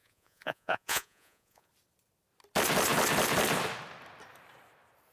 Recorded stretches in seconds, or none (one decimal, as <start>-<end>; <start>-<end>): 1.7-5.1